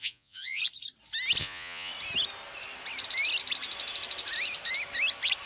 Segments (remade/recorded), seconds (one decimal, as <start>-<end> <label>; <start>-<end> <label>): 0.0-0.6 remade; 0.6-1.4 recorded; 1.4-1.9 remade; 1.9-5.5 recorded